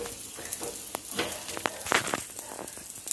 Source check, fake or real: real